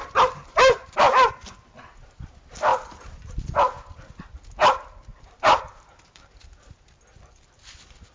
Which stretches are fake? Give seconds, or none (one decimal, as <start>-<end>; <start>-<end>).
0.0-1.3; 2.7-3.3; 5.1-7.0